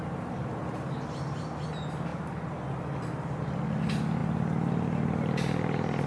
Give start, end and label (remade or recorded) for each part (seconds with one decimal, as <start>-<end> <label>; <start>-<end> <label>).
0.0-6.1 recorded